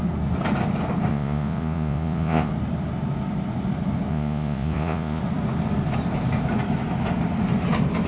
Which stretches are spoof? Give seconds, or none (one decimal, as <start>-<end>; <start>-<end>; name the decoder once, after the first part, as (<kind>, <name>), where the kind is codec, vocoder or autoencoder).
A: 1.1-2.5 (vocoder, Vocos); 4.1-5.2